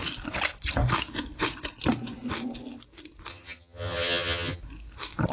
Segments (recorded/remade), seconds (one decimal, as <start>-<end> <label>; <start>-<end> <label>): 0.0-3.3 recorded; 3.3-4.6 remade; 4.6-5.3 recorded